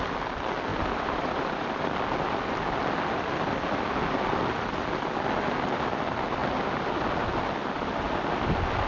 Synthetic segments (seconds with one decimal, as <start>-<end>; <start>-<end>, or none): 0.7-1.7